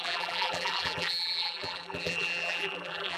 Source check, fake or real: fake